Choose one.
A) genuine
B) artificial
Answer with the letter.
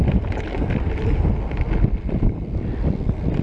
A